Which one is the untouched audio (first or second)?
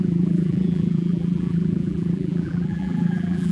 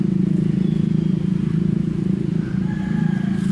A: second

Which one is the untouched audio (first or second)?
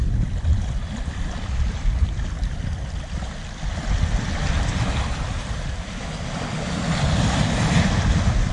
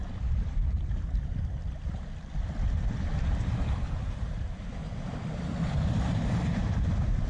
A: first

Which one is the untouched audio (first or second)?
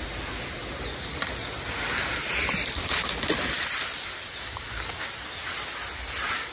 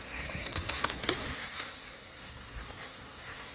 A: first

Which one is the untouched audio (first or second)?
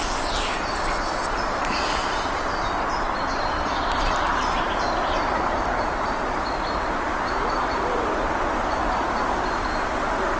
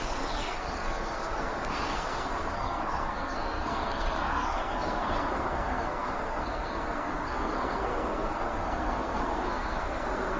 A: first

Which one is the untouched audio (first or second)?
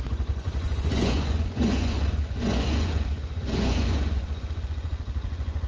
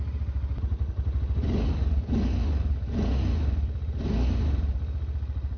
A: second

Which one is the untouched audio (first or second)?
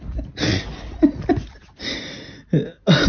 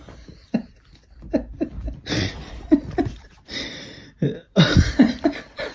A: first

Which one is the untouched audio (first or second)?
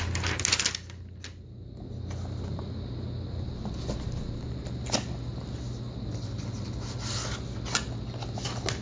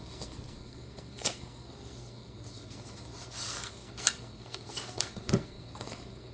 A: first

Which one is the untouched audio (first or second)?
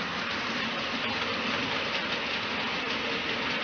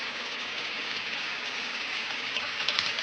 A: first